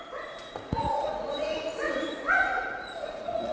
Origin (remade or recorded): remade